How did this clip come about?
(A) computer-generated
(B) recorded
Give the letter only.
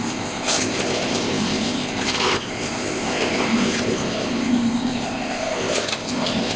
A